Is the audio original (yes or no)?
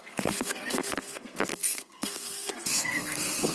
no